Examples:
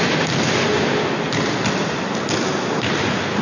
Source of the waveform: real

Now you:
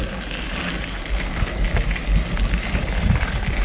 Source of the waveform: real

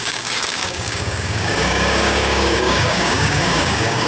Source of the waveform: fake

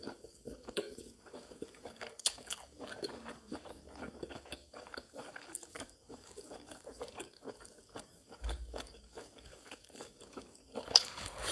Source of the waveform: fake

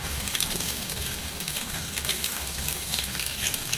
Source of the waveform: fake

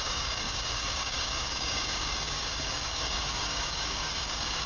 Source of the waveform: fake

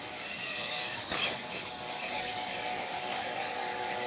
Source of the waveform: fake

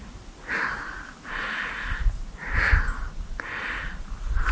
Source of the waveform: real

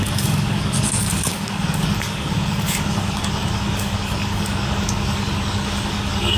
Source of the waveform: fake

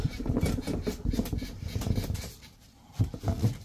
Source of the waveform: real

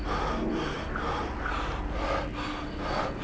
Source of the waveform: real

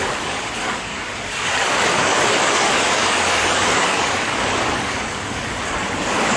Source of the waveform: fake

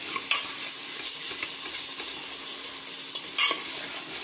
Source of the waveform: real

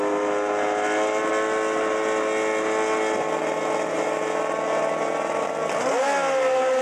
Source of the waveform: real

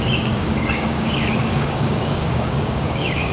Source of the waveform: fake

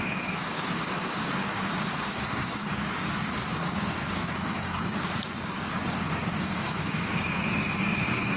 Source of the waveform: fake